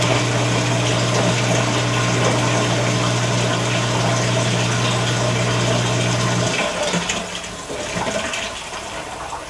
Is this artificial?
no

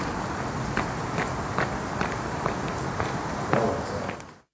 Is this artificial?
no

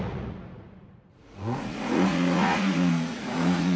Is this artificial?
yes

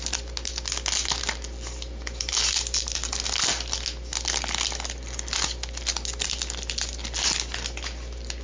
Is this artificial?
no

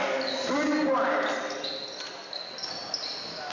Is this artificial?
no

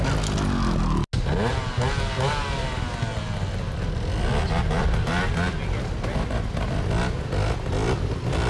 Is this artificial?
no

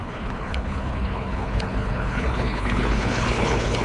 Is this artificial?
yes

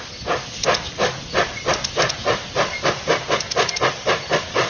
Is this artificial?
no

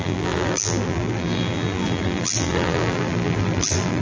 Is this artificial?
yes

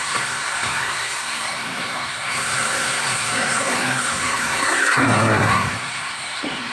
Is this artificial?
yes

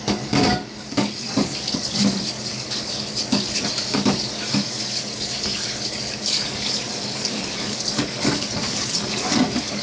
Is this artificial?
yes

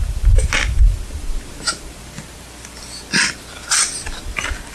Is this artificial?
yes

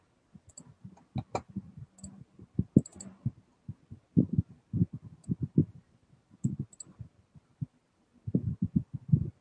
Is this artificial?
no